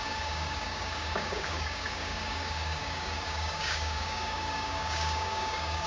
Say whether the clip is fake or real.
fake